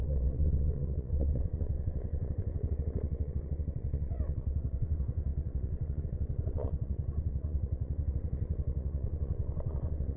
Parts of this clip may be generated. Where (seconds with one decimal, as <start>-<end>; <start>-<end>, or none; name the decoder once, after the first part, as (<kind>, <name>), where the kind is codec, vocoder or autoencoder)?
0.0-10.2 (vocoder, WaveNeXt)

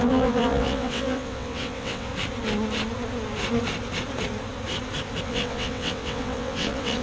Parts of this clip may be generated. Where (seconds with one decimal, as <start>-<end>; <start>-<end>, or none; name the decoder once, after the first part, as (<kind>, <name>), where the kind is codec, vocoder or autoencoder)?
0.0-2.1 (vocoder, WaveNeXt); 5.2-7.0

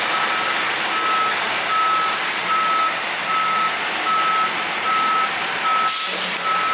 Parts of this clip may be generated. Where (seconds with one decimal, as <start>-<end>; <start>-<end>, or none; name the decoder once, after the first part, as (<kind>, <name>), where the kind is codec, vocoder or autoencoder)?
none

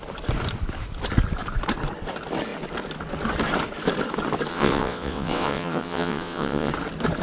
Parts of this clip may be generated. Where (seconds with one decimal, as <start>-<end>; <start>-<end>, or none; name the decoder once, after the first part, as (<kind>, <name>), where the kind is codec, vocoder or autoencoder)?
4.5-6.7 (vocoder, WaveNeXt)

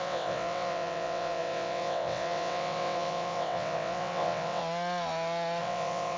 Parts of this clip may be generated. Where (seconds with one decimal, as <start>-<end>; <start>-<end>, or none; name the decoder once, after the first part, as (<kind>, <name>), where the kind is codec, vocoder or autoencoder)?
0.0-4.6 (vocoder, WaveNeXt); 5.6-6.2

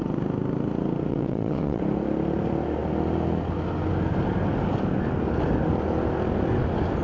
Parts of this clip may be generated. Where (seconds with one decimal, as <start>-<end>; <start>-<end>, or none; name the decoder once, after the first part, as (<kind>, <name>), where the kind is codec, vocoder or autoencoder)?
1.1-1.8 (vocoder, WaveNeXt)